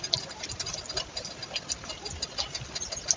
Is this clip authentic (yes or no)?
yes